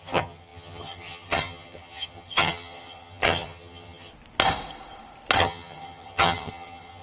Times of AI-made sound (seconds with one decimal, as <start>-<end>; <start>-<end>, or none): 0.0-4.1; 5.4-7.0